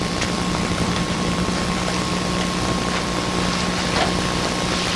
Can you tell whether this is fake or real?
real